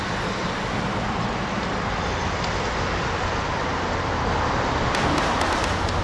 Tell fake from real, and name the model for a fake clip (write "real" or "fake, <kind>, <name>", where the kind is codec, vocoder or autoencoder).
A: real